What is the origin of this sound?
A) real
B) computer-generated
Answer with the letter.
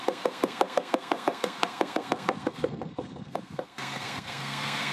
B